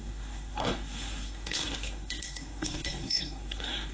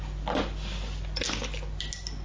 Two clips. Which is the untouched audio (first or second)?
second